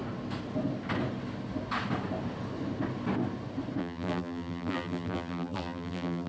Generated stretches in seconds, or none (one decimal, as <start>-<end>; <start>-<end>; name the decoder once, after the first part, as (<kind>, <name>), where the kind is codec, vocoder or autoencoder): 3.8-6.3 (vocoder, BigVGAN v2)